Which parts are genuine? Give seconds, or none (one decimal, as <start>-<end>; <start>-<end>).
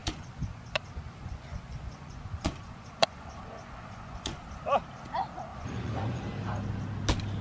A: 4.4-5.5; 6.2-7.4